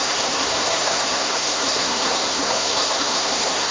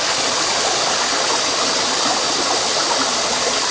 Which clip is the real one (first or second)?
second